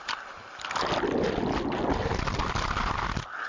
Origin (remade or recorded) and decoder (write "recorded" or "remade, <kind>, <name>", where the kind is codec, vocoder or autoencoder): recorded